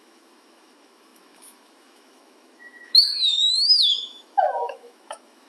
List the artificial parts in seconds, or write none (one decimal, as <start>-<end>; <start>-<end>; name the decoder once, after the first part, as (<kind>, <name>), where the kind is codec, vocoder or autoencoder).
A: 0.0-5.5 (autoencoder, DAC-VAE)

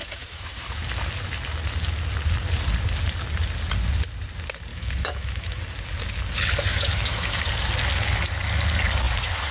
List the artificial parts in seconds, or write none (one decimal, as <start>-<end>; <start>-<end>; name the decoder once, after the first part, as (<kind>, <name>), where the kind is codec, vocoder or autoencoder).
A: 0.0-0.6 (autoencoder, DAC-VAE); 4.7-5.6; 6.7-7.4

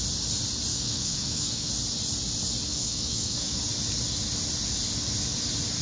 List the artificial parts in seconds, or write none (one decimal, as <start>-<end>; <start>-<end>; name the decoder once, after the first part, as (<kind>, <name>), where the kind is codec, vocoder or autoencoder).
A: 0.7-1.7 (autoencoder, DAC-VAE); 2.7-3.6

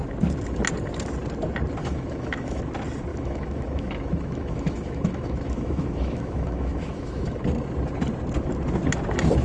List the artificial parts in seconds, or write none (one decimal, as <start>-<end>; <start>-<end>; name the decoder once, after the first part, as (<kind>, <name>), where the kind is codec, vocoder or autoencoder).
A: 1.8-2.6 (autoencoder, DAC-VAE); 3.1-7.4

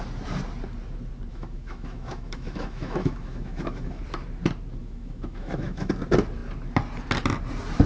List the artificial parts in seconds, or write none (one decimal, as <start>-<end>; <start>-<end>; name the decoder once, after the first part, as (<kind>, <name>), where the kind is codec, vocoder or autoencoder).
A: 1.3-4.0 (autoencoder, DAC-VAE); 4.8-5.9

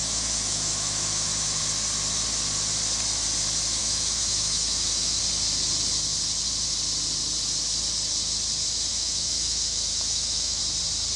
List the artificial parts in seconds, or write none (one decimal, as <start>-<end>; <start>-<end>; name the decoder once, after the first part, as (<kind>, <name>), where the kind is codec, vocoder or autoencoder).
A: 0.0-1.6 (autoencoder, DAC-VAE); 3.8-5.2; 8.9-10.6